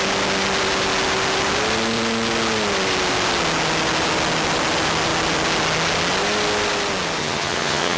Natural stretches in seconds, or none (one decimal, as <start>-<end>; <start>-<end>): 0.0-7.2